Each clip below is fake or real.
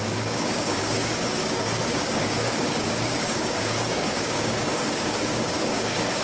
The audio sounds fake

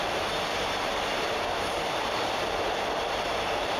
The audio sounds fake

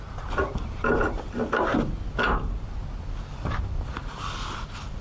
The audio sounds real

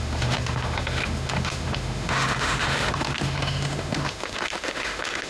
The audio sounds fake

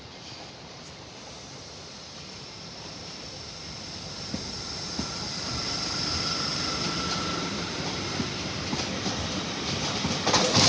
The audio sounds real